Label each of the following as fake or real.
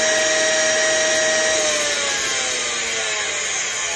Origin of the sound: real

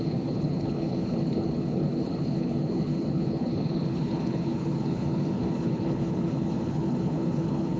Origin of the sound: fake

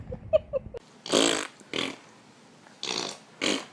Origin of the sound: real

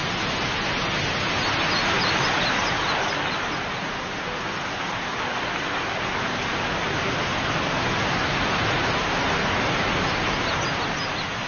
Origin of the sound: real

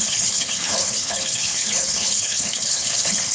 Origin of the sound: fake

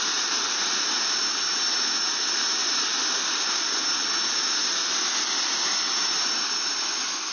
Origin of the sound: real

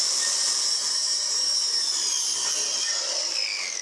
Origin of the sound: real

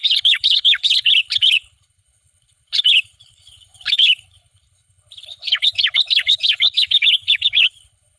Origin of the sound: fake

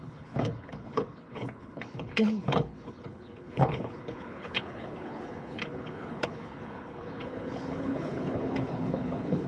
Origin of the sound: fake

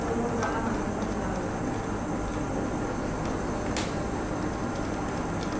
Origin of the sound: real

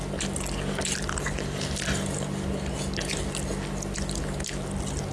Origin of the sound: real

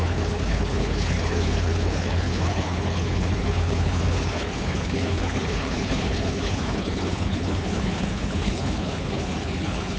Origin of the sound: fake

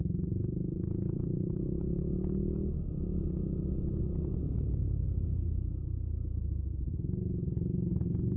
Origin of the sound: real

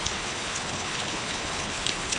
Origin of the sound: fake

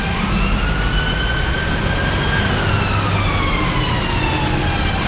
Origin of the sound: real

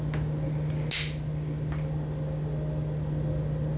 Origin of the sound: real